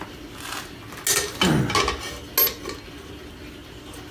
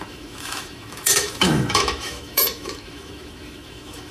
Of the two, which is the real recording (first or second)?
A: first